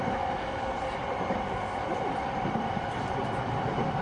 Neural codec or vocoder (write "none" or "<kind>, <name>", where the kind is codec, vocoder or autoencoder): vocoder, BigVGAN v2